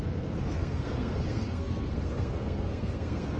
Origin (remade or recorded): remade